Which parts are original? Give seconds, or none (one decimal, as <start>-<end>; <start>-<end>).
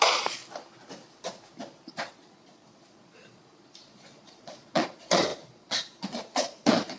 0.4-2.1